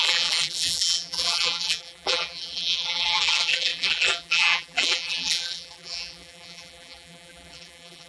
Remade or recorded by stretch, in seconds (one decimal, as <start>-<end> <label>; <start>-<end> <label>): 0.0-8.1 remade